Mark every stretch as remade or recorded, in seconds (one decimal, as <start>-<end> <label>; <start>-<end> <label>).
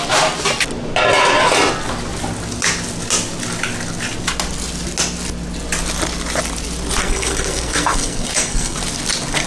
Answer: 0.0-7.0 recorded; 7.0-8.8 remade; 8.8-9.5 recorded